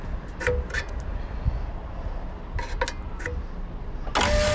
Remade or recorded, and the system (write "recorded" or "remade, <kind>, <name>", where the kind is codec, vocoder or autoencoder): recorded